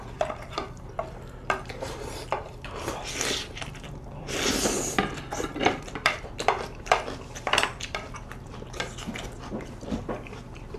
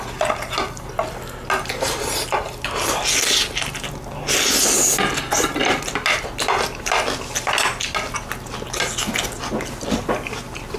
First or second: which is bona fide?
second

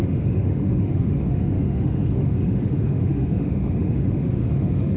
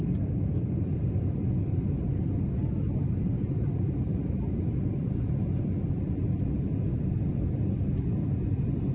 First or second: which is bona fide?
second